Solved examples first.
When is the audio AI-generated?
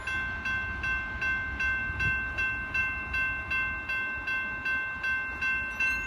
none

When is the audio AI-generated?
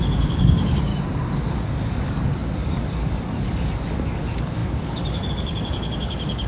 0.0-0.9 (codec, DAC); 1.5-6.5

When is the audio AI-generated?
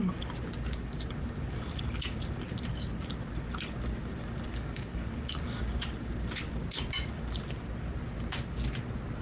4.5-5.6 (codec, DAC)